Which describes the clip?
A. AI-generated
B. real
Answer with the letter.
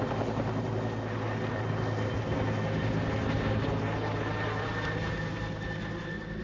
B